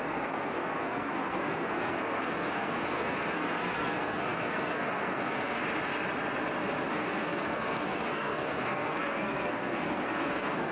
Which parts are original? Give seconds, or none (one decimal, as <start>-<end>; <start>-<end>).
5.6-6.9